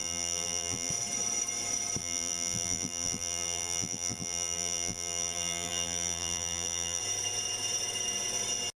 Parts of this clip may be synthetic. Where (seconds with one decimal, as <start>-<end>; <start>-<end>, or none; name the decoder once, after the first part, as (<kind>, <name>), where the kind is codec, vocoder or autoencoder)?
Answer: 0.0-0.9 (vocoder, BigVGAN v2); 2.0-7.0